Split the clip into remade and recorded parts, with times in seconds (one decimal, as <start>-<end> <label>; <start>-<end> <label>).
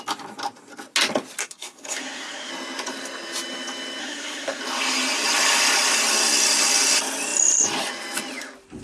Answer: 0.0-1.4 recorded; 1.4-2.5 remade; 2.5-4.0 recorded; 4.0-4.6 remade; 4.6-8.8 recorded